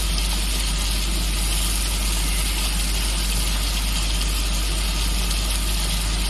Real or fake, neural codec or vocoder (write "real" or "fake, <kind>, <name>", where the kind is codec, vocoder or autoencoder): real